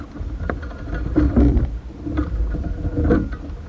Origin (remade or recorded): recorded